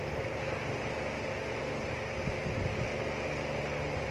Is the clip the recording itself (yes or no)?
yes